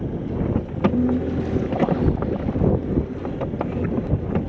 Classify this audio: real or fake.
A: real